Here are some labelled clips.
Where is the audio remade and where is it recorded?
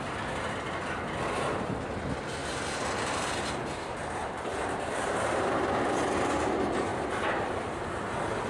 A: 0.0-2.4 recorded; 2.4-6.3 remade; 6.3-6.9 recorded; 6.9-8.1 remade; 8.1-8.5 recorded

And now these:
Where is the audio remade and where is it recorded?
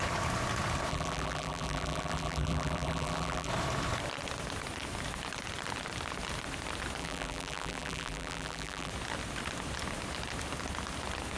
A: 0.0-0.9 recorded; 0.9-3.5 remade; 3.5-7.0 recorded; 7.0-8.9 remade; 8.9-11.4 recorded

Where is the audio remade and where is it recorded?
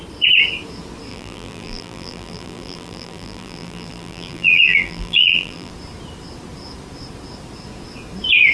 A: 0.0-1.1 recorded; 1.1-5.7 remade; 5.7-8.5 recorded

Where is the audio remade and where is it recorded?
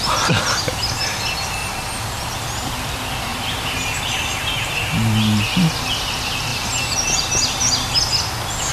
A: 0.0-3.3 recorded; 3.3-5.8 remade; 5.8-6.5 recorded; 6.5-7.2 remade; 7.2-8.7 recorded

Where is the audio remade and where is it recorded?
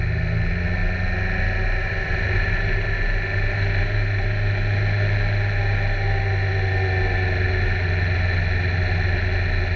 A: 0.0-9.8 recorded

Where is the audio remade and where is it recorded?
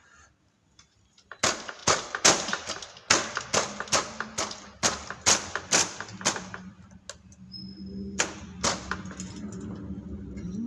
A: 0.0-1.8 recorded; 1.8-2.9 remade; 2.9-10.7 recorded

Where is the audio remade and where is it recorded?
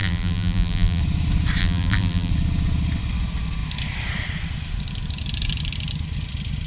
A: 0.0-1.0 remade; 1.0-1.6 recorded; 1.6-2.3 remade; 2.3-6.7 recorded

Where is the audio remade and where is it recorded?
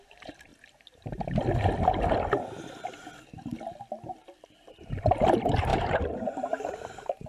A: 0.0-0.5 remade; 0.5-4.9 recorded; 4.9-7.3 remade